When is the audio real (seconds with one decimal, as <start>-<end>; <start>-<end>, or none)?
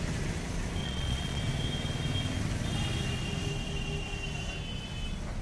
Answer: 0.0-0.8; 1.4-5.4